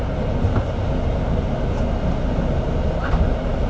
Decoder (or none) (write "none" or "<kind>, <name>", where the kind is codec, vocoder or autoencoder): none